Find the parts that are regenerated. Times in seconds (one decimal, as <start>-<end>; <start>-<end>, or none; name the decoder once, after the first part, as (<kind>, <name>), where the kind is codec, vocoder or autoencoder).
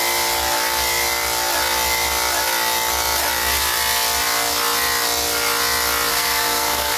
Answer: 6.1-7.0 (codec, SNAC)